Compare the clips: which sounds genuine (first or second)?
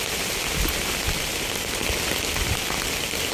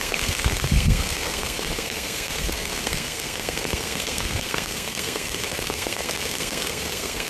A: first